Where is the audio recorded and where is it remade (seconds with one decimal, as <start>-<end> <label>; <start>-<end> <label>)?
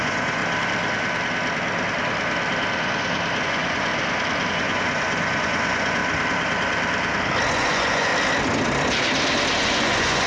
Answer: 0.0-0.4 remade; 0.4-3.4 recorded; 3.4-3.9 remade; 3.9-4.5 recorded; 4.5-6.0 remade; 6.0-7.5 recorded; 7.5-8.1 remade; 8.1-9.6 recorded; 9.6-10.3 remade